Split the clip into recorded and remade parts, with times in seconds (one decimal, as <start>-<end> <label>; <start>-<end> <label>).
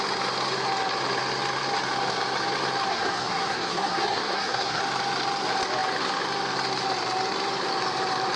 0.0-2.9 recorded; 2.9-4.8 remade; 4.8-8.4 recorded